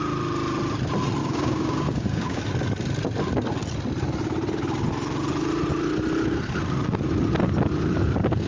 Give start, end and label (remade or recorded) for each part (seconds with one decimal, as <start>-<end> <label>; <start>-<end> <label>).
0.0-1.2 recorded; 1.2-2.4 remade; 2.4-8.5 recorded